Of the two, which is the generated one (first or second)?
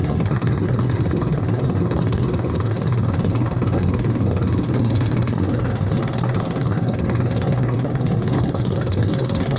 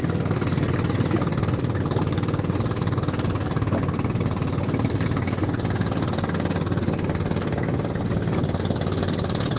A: first